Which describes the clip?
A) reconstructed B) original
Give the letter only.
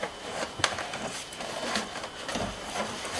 B